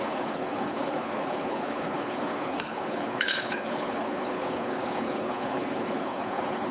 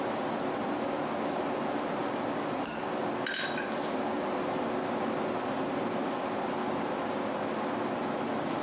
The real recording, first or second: second